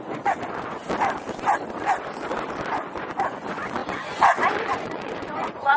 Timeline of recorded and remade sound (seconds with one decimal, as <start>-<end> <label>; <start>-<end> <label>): 0.0-0.8 remade; 0.8-2.7 recorded; 2.7-5.8 remade

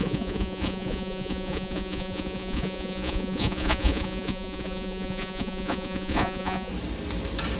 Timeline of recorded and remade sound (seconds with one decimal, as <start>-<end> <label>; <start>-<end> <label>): 0.0-6.7 remade; 6.7-7.6 recorded